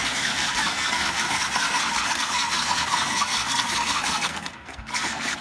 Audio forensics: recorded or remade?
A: remade